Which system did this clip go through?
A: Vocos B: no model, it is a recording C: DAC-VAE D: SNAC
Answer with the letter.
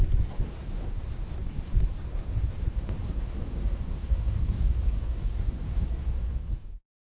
D